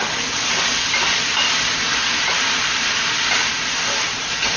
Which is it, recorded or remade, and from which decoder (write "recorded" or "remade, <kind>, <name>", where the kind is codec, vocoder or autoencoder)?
remade, vocoder, BigVGAN v2